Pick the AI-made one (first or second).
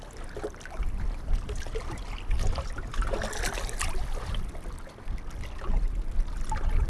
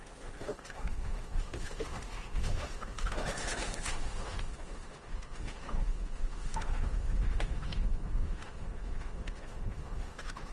second